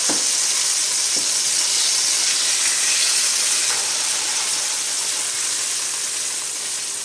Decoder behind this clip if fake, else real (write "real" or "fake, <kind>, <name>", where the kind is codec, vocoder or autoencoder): real